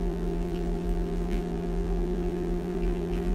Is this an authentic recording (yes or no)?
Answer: no